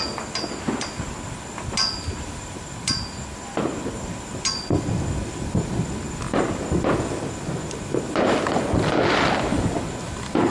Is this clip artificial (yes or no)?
no